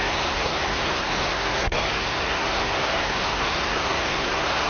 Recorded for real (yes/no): no